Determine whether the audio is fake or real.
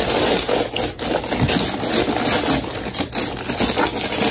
real